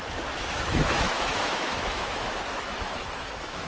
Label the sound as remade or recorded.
remade